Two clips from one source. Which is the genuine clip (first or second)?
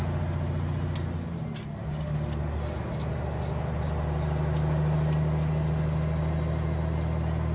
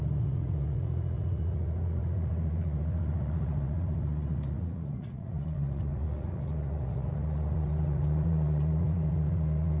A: first